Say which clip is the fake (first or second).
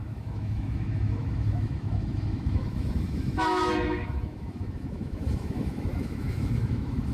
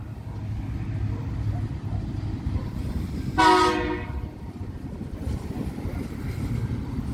first